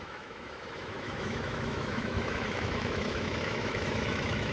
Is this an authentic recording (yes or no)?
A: no